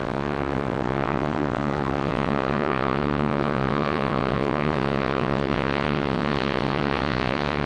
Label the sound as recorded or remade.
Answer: remade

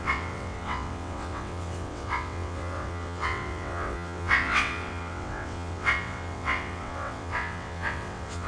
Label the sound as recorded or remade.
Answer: remade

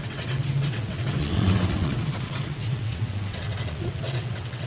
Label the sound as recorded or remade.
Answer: remade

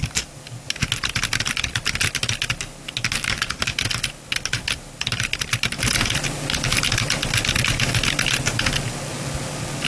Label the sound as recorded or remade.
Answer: recorded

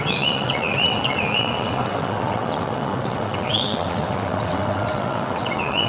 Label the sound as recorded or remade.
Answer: remade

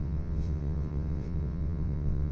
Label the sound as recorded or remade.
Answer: remade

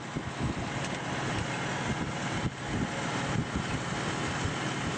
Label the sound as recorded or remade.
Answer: recorded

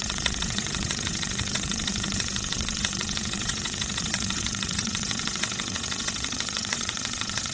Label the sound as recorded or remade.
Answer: remade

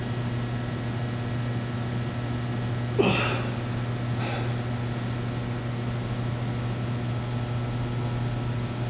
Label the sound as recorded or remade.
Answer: recorded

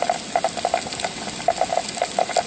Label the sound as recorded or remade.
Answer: recorded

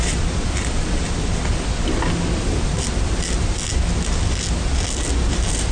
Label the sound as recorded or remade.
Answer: recorded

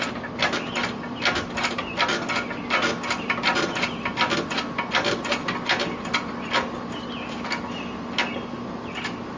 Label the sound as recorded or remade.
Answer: recorded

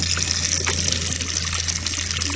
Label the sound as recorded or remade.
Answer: recorded